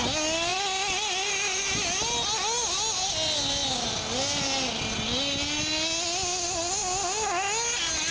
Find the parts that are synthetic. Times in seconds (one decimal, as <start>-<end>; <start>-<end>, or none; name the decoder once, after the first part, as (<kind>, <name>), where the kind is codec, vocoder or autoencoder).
none